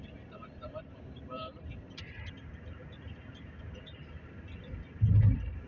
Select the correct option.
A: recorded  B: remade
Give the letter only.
A